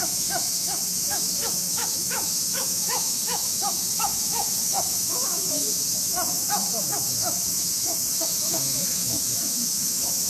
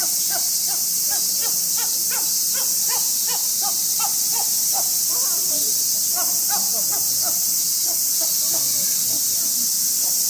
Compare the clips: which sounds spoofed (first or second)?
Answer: first